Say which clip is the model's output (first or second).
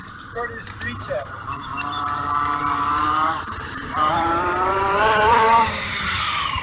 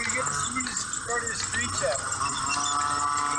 first